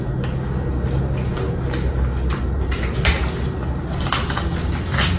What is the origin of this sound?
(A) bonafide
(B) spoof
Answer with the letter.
A